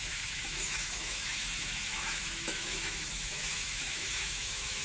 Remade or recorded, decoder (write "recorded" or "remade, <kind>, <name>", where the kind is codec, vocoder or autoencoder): remade, autoencoder, DAC-VAE